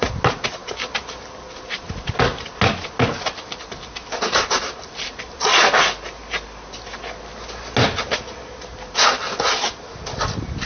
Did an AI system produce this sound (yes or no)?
no